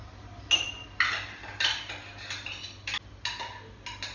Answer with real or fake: real